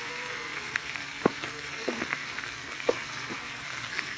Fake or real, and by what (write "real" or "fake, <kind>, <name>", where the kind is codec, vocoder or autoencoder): fake, codec, SNAC